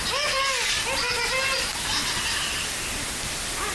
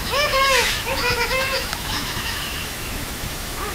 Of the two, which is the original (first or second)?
first